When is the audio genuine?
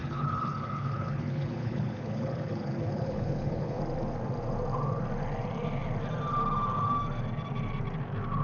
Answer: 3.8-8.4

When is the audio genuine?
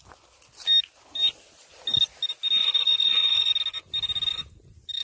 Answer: 0.0-2.6; 3.5-5.0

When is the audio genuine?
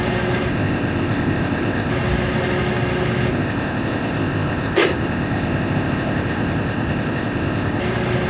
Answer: 0.0-0.5; 1.9-3.3; 7.8-8.3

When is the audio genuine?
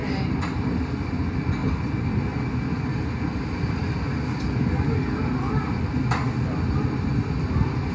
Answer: 0.0-7.9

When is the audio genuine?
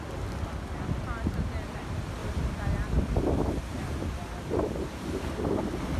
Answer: 0.0-6.0